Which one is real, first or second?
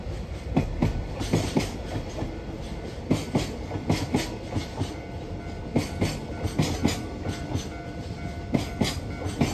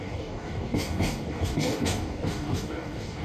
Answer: first